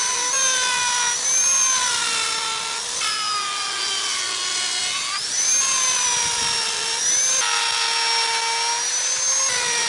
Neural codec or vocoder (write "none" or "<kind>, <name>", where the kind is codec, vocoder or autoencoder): none